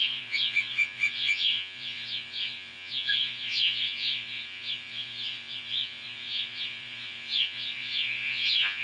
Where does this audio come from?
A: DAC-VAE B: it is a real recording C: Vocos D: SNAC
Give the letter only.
C